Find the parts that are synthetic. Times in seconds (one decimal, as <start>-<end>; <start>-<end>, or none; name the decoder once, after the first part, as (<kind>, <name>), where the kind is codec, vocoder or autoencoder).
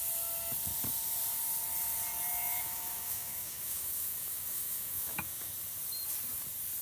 2.3-5.5 (autoencoder, DAC-VAE)